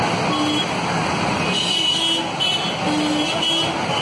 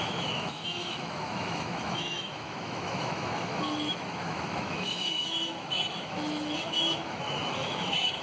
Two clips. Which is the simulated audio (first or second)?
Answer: second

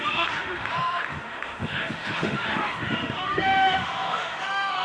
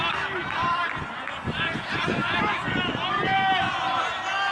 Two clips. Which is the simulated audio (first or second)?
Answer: first